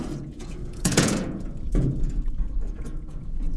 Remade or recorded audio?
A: remade